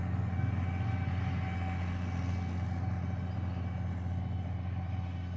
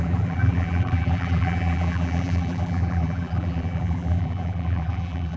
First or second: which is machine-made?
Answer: second